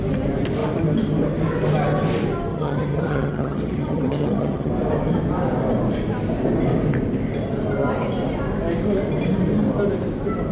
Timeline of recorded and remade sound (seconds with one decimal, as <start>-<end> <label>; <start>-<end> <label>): 0.0-2.5 recorded; 2.5-4.7 remade; 4.7-10.5 recorded

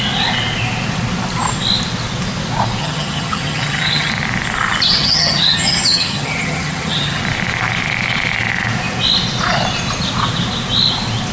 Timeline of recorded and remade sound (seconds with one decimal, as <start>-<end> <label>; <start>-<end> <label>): 0.0-2.8 recorded; 2.8-4.1 remade; 4.1-5.0 recorded; 5.0-7.2 remade; 7.2-11.3 recorded

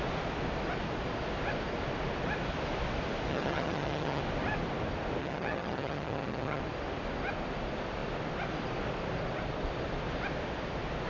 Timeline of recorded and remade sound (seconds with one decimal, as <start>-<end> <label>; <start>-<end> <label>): 0.0-3.3 recorded; 3.3-4.2 remade; 4.2-5.2 recorded; 5.2-6.6 remade; 6.6-11.1 recorded

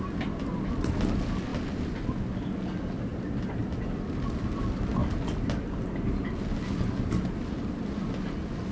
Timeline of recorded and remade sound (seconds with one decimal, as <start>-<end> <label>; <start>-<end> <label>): 0.0-8.7 recorded

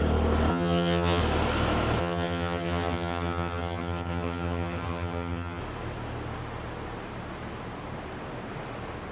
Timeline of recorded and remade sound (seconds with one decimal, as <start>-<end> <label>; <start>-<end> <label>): 0.0-0.5 recorded; 0.5-1.2 remade; 1.2-2.0 recorded; 2.0-5.6 remade; 5.6-9.1 recorded